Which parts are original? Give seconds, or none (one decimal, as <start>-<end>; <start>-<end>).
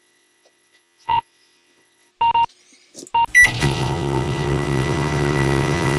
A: 2.1-3.6